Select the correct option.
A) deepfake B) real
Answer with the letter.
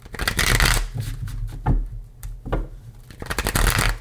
B